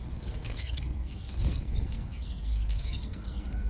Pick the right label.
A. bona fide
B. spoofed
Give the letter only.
B